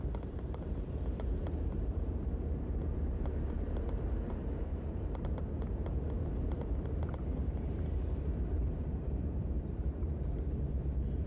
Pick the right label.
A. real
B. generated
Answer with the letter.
B